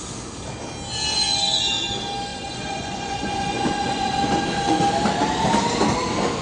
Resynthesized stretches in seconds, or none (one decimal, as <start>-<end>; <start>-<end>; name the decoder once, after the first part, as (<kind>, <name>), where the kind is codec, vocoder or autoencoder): 2.3-4.2 (vocoder, Vocos)